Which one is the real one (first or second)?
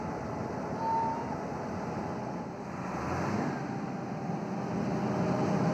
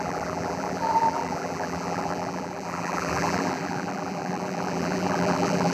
first